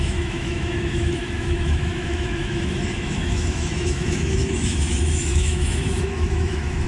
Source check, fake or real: fake